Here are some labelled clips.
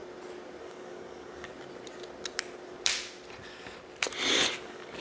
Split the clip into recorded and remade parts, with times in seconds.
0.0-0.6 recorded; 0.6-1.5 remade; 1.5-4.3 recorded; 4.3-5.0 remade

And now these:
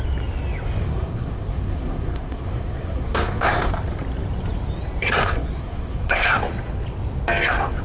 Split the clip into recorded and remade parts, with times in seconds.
0.0-0.8 recorded; 0.8-3.7 remade; 3.7-5.2 recorded; 5.2-6.4 remade; 6.4-7.8 recorded

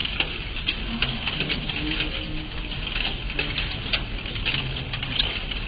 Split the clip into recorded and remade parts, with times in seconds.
0.0-5.7 recorded

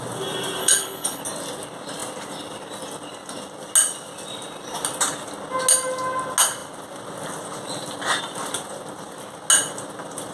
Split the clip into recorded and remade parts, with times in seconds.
0.0-0.6 recorded; 0.6-1.2 remade; 1.2-10.3 recorded

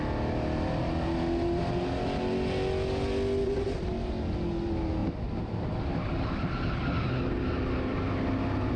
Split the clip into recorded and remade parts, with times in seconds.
0.0-8.8 recorded

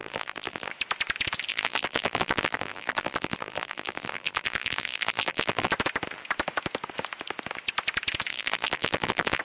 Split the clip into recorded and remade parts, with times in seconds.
0.0-0.7 remade; 0.7-1.5 recorded; 1.5-5.7 remade; 5.7-8.3 recorded; 8.3-9.4 remade